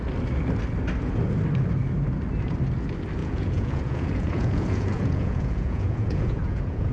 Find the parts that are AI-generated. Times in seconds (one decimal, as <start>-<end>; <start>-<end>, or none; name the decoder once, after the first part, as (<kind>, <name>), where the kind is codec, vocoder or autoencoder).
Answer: 3.2-6.9 (vocoder, Vocos)